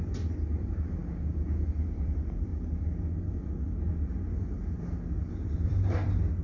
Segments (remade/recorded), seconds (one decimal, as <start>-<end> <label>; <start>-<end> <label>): 0.0-1.0 remade; 1.0-1.7 recorded; 1.7-2.5 remade; 2.5-3.9 recorded; 3.9-6.4 remade